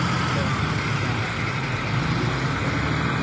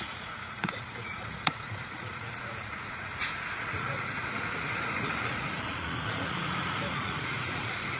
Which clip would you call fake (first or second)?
second